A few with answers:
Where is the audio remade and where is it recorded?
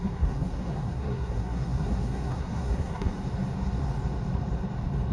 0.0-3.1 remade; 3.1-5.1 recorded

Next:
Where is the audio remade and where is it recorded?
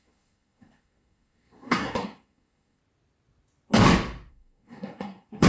0.0-2.8 remade; 2.8-4.3 recorded; 4.3-5.5 remade